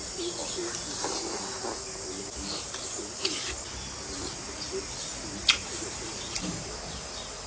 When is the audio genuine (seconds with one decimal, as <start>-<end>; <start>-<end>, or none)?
0.0-5.6; 7.1-7.5

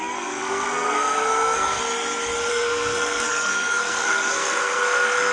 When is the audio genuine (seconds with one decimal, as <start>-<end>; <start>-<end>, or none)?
1.8-2.5

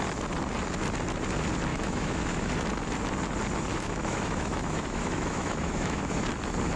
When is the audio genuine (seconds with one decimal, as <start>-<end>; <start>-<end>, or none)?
0.0-1.7; 2.5-3.7; 6.1-6.8